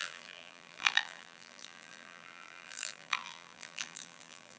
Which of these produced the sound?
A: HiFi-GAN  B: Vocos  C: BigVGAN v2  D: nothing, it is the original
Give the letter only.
C